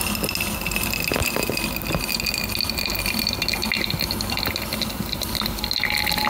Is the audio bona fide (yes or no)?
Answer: yes